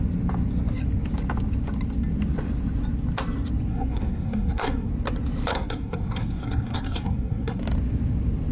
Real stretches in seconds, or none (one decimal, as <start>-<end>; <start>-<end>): 0.0-3.7; 4.9-5.5; 7.6-8.5